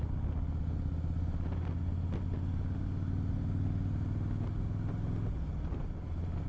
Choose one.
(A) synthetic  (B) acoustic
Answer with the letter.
B